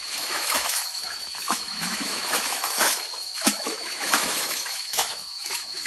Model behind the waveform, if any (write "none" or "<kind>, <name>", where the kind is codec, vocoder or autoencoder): autoencoder, DAC-VAE